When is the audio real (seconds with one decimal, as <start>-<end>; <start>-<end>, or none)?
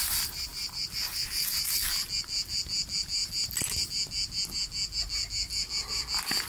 0.0-6.5